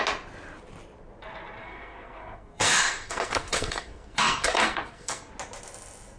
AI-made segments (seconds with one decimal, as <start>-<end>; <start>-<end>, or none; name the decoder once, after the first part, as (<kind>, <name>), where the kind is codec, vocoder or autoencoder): 1.6-5.3 (codec, SNAC)